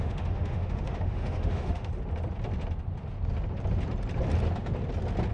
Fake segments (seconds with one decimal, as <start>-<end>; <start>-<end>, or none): 0.0-1.9